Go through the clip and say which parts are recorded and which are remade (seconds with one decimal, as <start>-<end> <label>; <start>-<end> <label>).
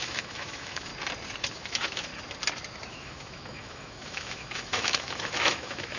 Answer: 0.0-0.9 remade; 0.9-1.5 recorded; 1.5-2.1 remade; 2.1-2.9 recorded; 2.9-6.0 remade